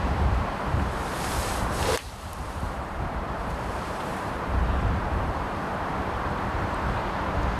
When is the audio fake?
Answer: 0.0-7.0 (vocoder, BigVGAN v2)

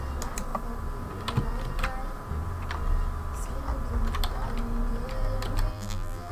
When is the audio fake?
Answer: 5.7-6.3 (vocoder, BigVGAN v2)

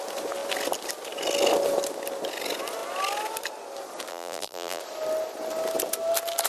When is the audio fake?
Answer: 4.1-4.8 (vocoder, BigVGAN v2)

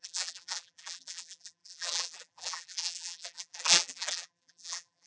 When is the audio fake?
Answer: 0.0-5.1 (vocoder, BigVGAN v2)

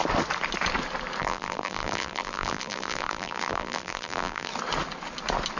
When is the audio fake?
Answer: 1.2-4.5 (vocoder, BigVGAN v2)

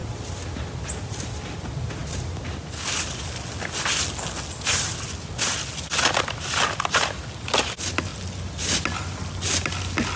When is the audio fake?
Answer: none

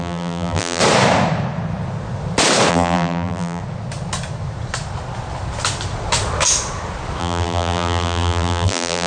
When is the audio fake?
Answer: 0.0-0.8 (vocoder, BigVGAN v2); 2.7-3.6; 7.2-9.1